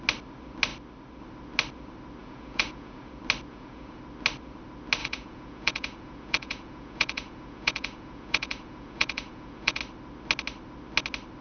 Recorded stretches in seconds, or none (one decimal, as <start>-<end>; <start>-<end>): 0.0-2.2; 3.1-3.5; 4.0-5.0; 9.8-11.4